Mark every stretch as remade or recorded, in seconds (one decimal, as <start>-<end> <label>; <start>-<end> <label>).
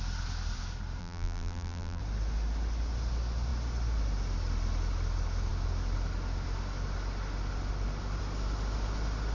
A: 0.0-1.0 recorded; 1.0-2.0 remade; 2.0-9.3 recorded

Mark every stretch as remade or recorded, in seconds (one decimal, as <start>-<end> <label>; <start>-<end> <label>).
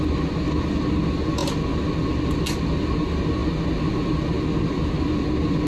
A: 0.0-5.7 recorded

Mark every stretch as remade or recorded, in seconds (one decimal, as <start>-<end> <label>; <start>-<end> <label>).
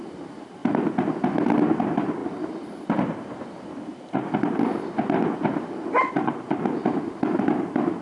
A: 0.0-0.6 remade; 0.6-1.8 recorded; 1.8-2.2 remade; 2.2-6.1 recorded; 6.1-8.0 remade